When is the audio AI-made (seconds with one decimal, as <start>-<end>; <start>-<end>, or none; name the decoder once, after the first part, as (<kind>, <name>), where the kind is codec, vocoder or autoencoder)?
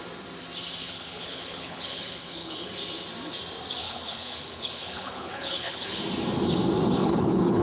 0.8-2.7 (codec, HILCodec); 3.8-6.0; 7.0-7.6